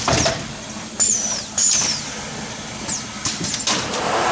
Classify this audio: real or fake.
real